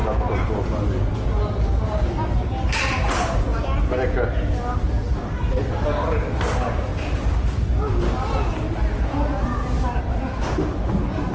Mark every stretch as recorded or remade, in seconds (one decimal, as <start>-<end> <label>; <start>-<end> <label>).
0.0-11.3 recorded